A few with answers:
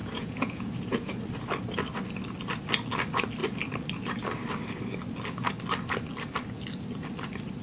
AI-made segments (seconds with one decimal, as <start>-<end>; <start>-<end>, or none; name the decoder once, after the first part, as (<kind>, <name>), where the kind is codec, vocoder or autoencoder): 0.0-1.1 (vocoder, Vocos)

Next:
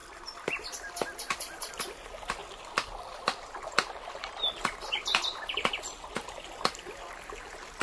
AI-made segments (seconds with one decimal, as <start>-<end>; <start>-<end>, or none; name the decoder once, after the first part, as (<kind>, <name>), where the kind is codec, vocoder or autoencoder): 0.0-1.7 (vocoder, BigVGAN v2); 2.4-6.9

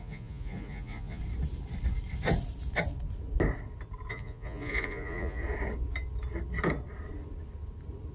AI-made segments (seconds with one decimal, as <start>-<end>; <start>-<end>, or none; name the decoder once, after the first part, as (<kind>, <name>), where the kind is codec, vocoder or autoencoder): 0.0-1.2 (vocoder, Vocos); 4.1-5.4

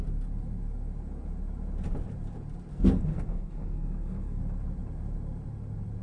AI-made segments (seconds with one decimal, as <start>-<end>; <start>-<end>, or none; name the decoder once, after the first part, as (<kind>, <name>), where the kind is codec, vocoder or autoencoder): 2.7-4.4 (codec, SNAC)